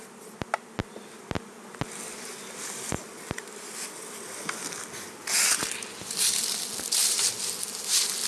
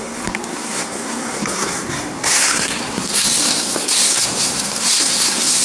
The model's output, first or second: second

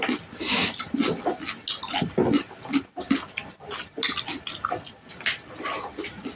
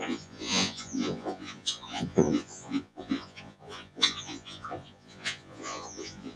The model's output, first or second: second